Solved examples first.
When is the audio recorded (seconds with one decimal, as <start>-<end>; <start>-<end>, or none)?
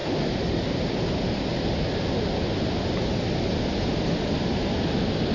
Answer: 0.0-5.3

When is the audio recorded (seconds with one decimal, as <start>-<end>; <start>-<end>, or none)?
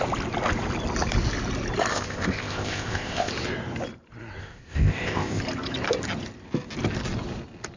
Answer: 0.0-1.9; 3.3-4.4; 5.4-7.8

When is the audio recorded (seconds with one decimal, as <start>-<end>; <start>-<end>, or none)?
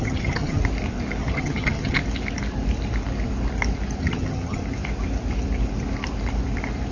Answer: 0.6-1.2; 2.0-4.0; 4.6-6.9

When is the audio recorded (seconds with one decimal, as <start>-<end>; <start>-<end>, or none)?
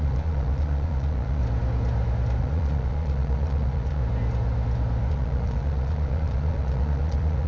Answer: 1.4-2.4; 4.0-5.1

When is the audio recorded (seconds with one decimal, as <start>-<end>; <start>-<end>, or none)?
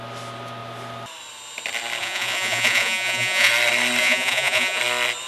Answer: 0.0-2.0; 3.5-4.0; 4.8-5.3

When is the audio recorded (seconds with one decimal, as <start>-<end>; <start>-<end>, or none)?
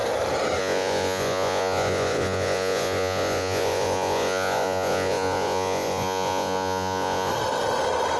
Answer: 0.0-0.6; 7.3-8.2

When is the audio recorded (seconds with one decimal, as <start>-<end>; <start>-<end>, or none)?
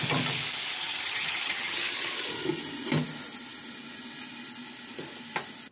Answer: 0.0-0.7; 2.1-5.7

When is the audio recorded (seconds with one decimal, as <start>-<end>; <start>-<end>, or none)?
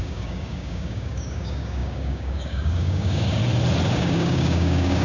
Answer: 3.4-3.9